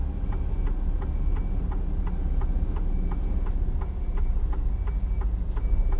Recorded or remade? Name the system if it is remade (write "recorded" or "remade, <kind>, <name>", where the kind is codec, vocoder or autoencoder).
recorded